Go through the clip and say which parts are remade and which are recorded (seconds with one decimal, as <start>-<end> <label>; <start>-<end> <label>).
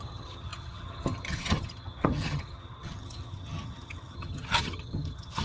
0.0-5.4 remade